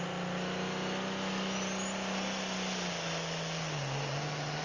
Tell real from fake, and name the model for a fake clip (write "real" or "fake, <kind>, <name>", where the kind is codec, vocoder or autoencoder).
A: real